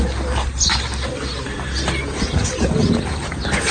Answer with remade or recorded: recorded